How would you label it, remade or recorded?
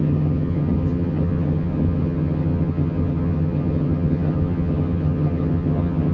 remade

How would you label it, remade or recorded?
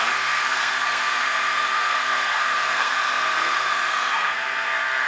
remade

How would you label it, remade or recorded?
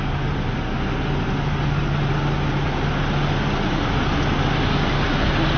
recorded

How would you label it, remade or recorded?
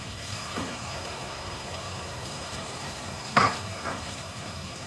remade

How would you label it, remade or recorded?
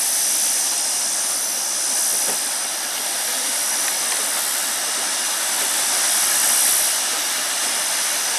recorded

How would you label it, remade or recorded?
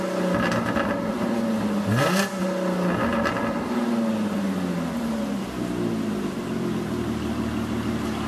recorded